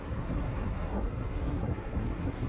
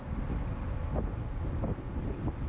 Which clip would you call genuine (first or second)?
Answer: second